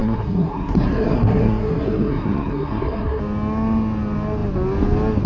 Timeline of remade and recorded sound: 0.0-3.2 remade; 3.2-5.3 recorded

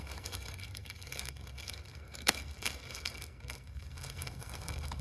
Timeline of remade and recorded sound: 0.0-5.0 remade

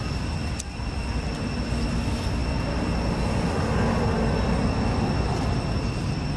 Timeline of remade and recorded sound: 0.0-6.4 recorded

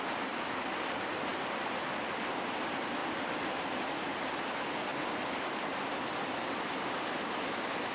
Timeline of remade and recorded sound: 0.0-7.9 recorded

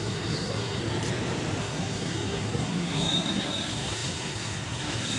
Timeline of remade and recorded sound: 0.0-0.8 remade; 0.8-1.6 recorded; 1.6-5.2 remade

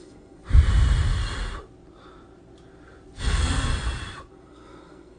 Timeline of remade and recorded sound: 0.0-0.4 remade; 0.4-3.2 recorded; 3.2-3.7 remade; 3.7-4.3 recorded; 4.3-5.2 remade